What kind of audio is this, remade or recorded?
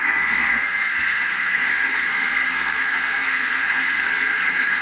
remade